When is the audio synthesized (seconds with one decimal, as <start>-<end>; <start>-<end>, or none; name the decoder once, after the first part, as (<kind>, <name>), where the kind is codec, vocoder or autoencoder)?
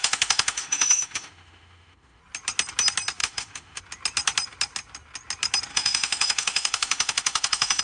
0.0-2.2 (autoencoder, DAC-VAE); 3.2-3.8; 5.7-7.8